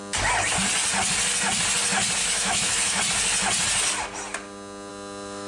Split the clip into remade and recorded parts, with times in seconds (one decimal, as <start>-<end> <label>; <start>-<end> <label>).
0.0-2.2 recorded; 2.2-3.0 remade; 3.0-4.9 recorded; 4.9-5.5 remade